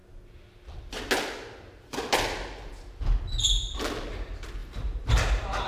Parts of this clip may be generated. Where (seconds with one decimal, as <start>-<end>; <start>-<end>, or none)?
4.6-5.7